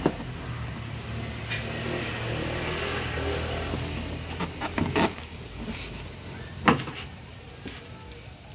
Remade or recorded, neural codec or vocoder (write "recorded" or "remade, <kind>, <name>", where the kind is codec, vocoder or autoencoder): recorded